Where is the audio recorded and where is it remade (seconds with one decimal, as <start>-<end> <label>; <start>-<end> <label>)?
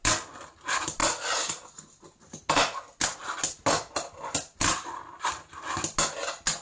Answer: 0.0-6.6 recorded